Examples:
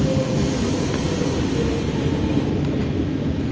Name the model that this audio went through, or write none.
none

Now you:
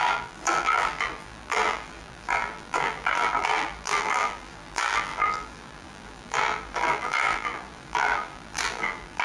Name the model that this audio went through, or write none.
vocoder, BigVGAN v2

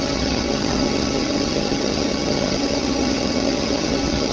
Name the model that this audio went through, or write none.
vocoder, HiFi-GAN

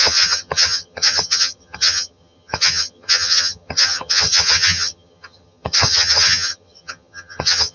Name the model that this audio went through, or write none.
vocoder, HiFi-GAN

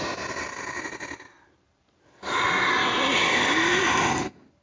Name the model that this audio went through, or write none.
none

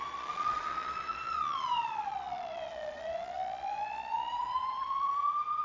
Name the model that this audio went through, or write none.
vocoder, Vocos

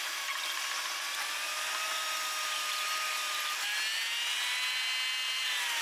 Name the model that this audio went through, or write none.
none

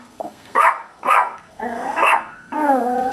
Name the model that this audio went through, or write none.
codec, SNAC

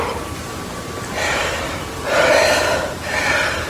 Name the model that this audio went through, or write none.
none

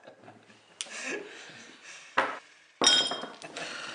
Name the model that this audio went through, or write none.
none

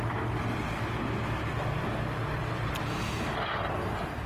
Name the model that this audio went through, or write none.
none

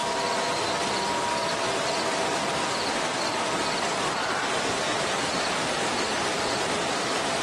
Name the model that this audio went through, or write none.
vocoder, BigVGAN v2